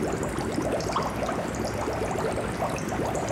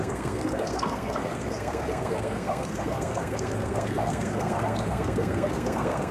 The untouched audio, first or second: first